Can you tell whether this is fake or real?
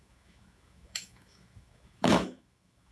fake